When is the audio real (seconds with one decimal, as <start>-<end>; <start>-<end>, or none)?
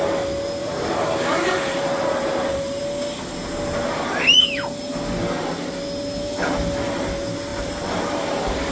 0.0-0.6; 2.8-7.5